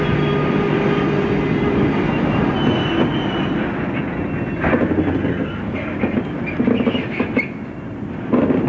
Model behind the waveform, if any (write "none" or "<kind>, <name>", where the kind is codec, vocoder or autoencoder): none